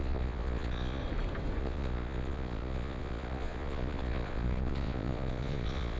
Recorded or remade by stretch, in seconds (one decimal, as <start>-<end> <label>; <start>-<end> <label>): 0.0-1.0 remade; 1.0-1.6 recorded; 1.6-6.0 remade

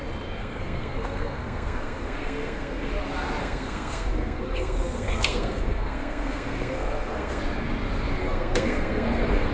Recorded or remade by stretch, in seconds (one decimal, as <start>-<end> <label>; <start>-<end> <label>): 0.0-0.4 recorded; 0.4-2.9 remade; 2.9-3.4 recorded; 3.4-7.4 remade; 7.4-8.2 recorded; 8.2-9.5 remade

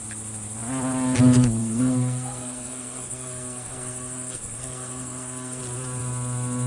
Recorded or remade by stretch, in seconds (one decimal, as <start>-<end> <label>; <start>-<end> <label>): 0.0-1.6 recorded; 1.6-5.6 remade; 5.6-6.7 recorded